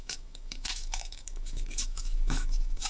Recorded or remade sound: remade